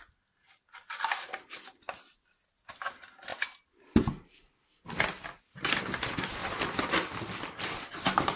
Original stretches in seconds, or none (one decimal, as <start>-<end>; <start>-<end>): 0.0-8.4